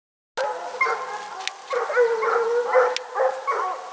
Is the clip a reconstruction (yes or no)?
no